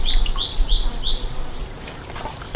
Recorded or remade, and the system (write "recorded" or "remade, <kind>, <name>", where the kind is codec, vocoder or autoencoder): recorded